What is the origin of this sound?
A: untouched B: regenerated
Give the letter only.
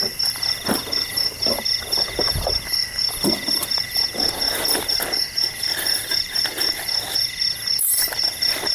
A